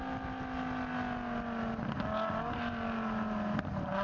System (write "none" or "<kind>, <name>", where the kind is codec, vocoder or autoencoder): none